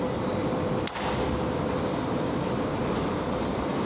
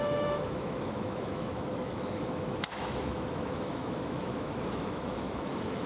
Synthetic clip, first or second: second